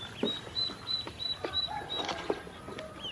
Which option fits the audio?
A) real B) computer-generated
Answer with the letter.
A